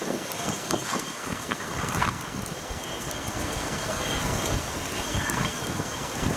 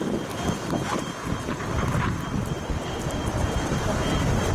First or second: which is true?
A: second